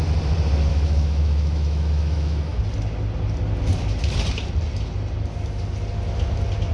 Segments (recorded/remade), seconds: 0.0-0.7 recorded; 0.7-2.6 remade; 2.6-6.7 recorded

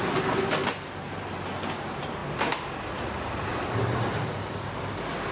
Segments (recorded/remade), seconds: 0.0-5.3 recorded

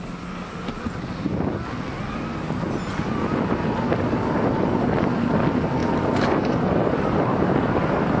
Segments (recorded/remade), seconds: 0.0-8.2 recorded

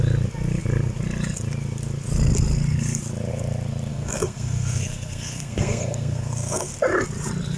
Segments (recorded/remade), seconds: 0.0-3.9 recorded; 3.9-6.7 remade; 6.7-7.6 recorded

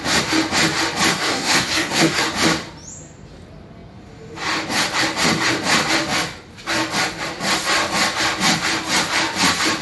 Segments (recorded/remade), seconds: 0.0-1.1 recorded; 1.1-2.2 remade; 2.2-9.8 recorded